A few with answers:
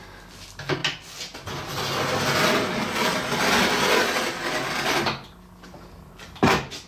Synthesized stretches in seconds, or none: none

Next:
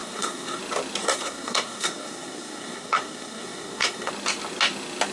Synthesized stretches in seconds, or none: 0.0-0.6 (codec, SNAC); 1.0-4.1

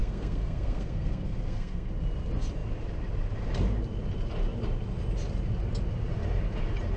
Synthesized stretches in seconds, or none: 0.0-1.9 (codec, SNAC)

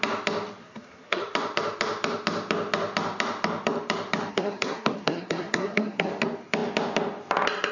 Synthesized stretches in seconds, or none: 0.6-1.2 (codec, SNAC); 4.3-6.1

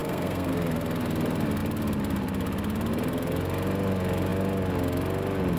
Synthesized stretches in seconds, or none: 0.0-0.5 (codec, SNAC)